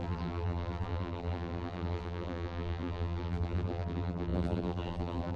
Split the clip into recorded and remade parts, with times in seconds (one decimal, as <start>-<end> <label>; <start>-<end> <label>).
0.0-5.4 remade